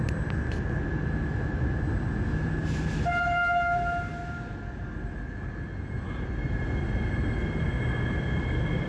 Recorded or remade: recorded